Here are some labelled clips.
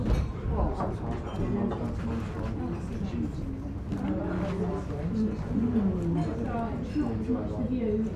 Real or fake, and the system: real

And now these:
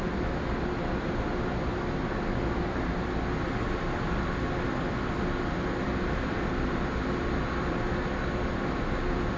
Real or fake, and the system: real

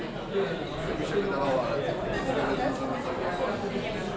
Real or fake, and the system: real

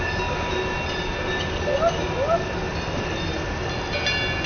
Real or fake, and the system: real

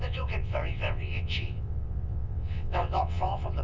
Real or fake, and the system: fake, vocoder, WaveNeXt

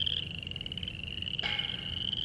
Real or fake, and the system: real